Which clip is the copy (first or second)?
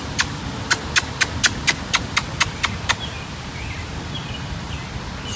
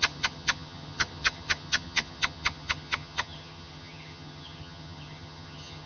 second